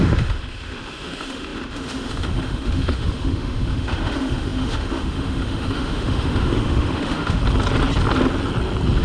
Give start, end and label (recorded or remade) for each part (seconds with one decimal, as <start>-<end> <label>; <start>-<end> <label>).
0.0-7.4 remade; 7.4-9.0 recorded